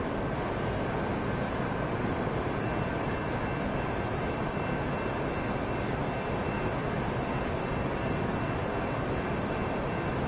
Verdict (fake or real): real